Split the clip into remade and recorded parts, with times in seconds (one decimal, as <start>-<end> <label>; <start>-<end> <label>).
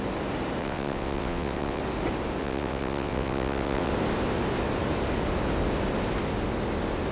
0.0-0.6 recorded; 0.6-1.8 remade; 1.8-2.4 recorded; 2.4-3.9 remade; 3.9-7.1 recorded